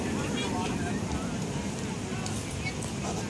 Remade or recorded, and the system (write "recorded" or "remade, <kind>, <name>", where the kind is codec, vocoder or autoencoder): recorded